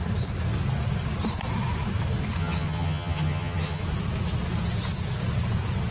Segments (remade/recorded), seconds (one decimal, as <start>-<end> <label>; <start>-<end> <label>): 0.0-2.4 recorded; 2.4-3.8 remade; 3.8-5.9 recorded